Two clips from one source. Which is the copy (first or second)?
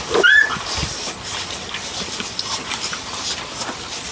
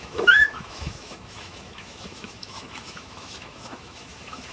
second